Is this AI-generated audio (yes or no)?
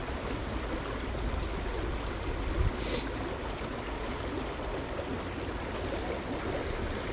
no